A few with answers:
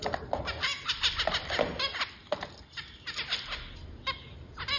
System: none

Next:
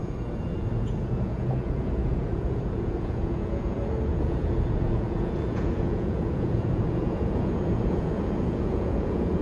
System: vocoder, Vocos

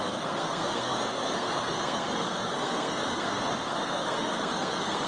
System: codec, SNAC